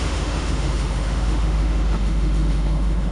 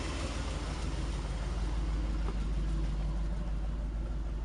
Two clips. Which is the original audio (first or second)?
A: second